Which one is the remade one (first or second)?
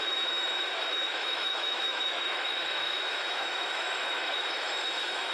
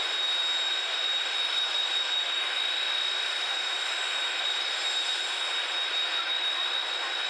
first